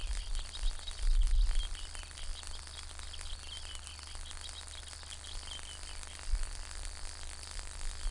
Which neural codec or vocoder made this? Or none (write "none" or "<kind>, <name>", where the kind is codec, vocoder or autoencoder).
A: none